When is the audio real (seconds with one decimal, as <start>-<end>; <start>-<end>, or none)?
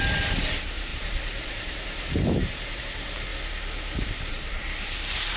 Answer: 3.3-4.3